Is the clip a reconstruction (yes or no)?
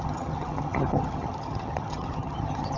yes